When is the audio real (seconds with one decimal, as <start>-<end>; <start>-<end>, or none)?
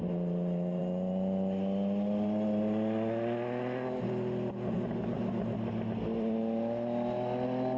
0.0-7.8